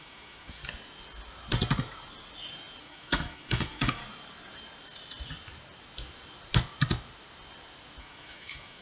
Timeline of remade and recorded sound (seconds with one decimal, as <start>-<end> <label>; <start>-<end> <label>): 0.0-0.6 remade; 0.6-2.8 recorded; 2.8-4.0 remade; 4.0-8.0 recorded; 8.0-8.8 remade